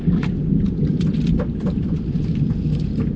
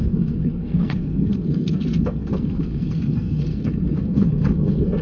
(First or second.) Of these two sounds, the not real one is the second